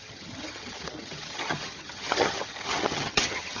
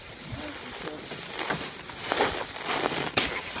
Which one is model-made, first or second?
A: first